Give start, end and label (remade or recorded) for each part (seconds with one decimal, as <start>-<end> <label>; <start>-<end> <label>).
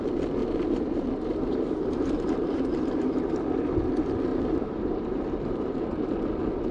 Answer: 0.0-0.4 recorded; 0.4-3.3 remade; 3.3-4.3 recorded; 4.3-6.2 remade; 6.2-6.7 recorded